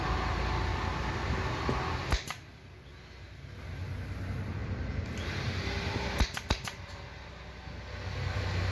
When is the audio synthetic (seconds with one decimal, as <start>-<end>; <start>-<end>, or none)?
none